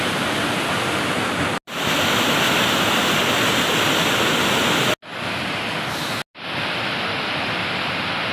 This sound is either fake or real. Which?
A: real